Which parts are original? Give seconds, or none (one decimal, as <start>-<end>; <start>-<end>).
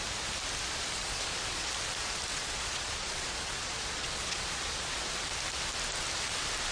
0.0-1.0; 1.7-2.3; 5.0-6.7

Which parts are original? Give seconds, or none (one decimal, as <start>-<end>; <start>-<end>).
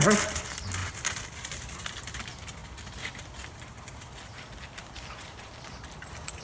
0.0-0.8; 1.8-2.6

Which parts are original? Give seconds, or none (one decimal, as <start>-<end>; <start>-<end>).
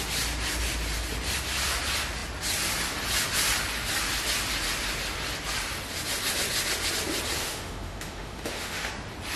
0.0-7.4; 8.9-9.4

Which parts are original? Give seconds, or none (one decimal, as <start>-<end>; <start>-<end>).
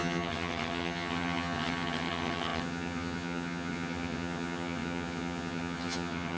none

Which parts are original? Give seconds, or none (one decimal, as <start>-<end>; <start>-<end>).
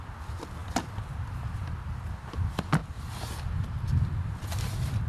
0.0-2.8; 3.3-5.1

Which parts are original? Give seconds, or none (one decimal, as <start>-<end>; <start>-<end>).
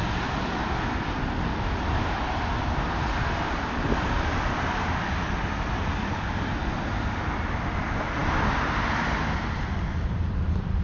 0.0-10.8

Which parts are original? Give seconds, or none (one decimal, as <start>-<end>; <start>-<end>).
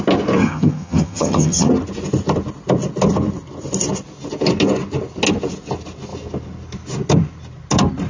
0.0-0.4; 1.7-8.1